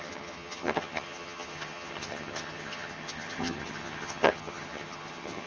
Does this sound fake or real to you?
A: fake